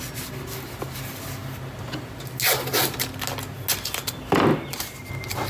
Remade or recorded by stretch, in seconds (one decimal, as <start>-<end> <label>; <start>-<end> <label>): 0.0-4.5 recorded; 4.5-5.1 remade; 5.1-5.5 recorded